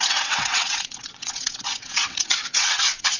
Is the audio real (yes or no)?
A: no